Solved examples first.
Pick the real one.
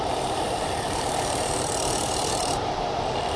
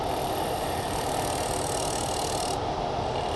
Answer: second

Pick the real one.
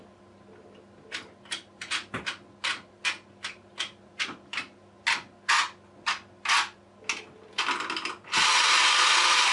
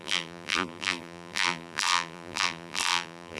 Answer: first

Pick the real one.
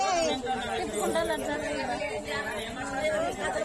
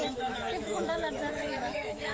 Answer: first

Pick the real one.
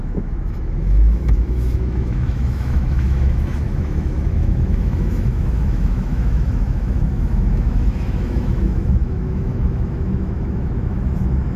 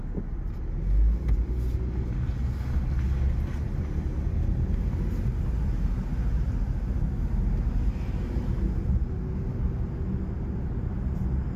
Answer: second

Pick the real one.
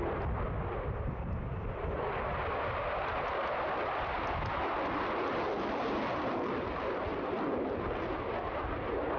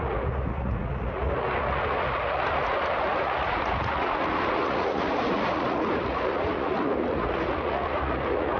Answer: first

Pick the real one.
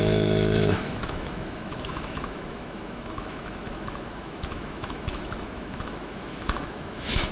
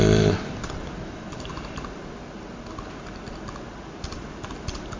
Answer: second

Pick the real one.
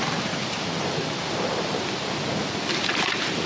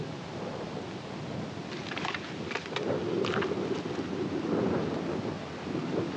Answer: second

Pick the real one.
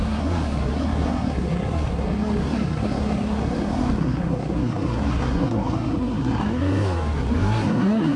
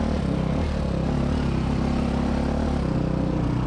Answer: second